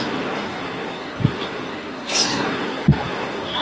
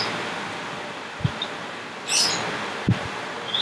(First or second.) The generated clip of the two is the first